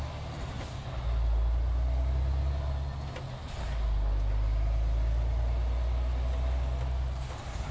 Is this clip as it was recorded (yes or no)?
yes